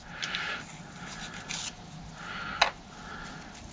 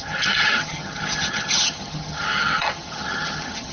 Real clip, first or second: first